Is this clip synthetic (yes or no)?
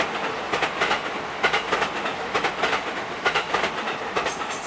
no